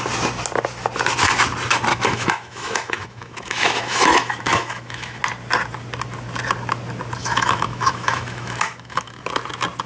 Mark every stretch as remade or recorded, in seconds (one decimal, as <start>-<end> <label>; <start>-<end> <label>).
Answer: 0.0-1.9 recorded; 1.9-5.2 remade; 5.2-7.2 recorded; 7.2-9.2 remade; 9.2-9.9 recorded